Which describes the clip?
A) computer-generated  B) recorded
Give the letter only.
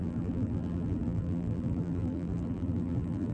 A